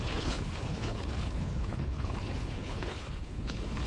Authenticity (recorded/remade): remade